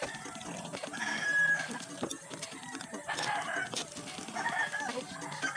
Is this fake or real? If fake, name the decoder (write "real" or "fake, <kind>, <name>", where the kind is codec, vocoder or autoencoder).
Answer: real